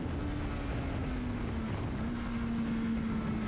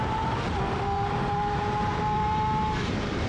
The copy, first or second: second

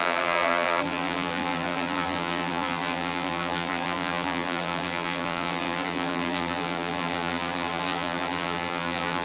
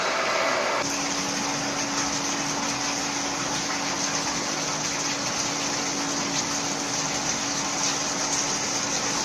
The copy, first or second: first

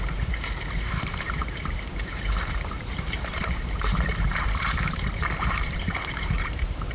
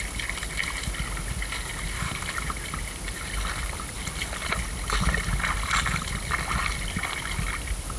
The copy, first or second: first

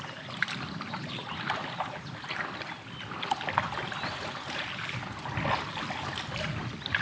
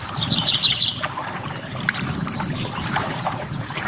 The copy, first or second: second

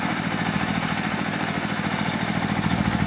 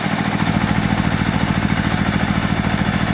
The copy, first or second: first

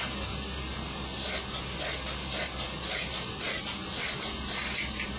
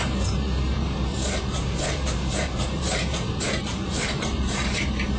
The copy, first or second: second